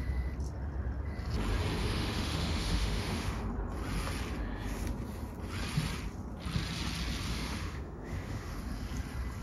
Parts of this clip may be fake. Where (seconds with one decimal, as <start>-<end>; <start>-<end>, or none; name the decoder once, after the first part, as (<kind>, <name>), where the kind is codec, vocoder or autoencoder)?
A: 1.8-3.4 (autoencoder, DAC-VAE); 7.3-8.6